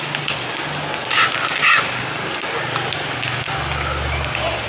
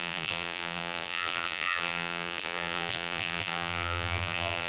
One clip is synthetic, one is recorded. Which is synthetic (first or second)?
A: second